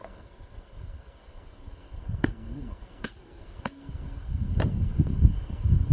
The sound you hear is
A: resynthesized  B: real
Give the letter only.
A